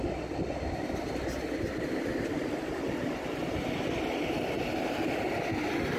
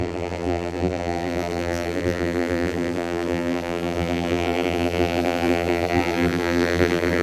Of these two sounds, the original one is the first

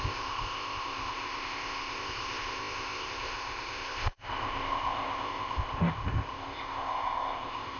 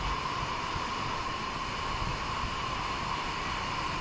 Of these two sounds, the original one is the second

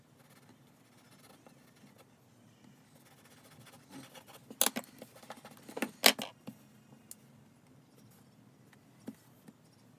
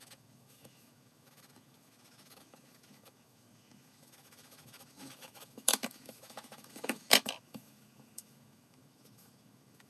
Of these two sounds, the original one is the first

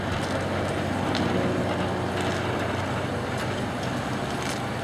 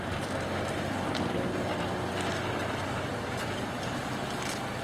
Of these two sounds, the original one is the first